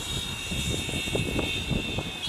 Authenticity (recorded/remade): remade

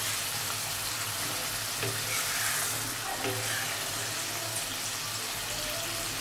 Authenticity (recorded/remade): recorded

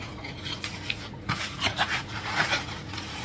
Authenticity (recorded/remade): remade